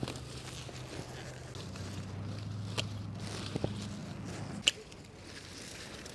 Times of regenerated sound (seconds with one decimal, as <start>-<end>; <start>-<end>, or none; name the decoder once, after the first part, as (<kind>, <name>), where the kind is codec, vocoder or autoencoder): none